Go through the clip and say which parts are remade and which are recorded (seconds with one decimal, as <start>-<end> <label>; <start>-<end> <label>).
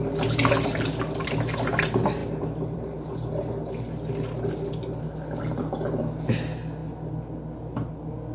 0.0-2.2 recorded; 2.2-3.1 remade; 3.1-8.3 recorded